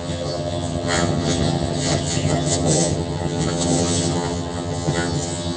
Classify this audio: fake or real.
fake